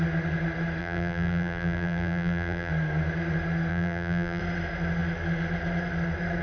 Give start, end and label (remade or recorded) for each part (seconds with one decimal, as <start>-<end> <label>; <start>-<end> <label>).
0.0-0.8 recorded; 0.8-2.7 remade; 2.7-3.7 recorded; 3.7-4.4 remade; 4.4-6.4 recorded